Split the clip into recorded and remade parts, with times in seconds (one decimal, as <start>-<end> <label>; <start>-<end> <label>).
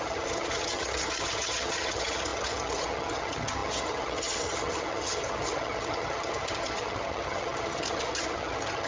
0.0-8.9 remade